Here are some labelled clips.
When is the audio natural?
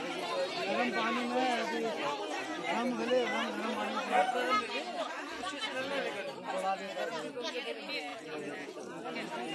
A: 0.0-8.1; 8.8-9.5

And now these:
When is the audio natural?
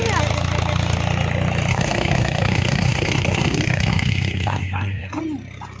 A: 0.0-1.7; 5.2-5.8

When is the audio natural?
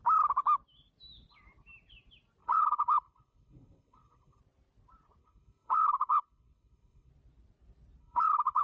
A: 0.0-2.4; 4.4-5.2; 7.1-8.0